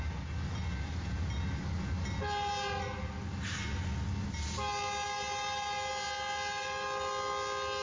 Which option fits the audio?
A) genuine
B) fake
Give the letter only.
A